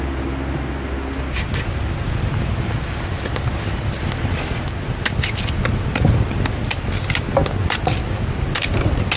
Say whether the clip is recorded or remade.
recorded